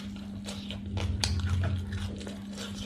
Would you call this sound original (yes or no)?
yes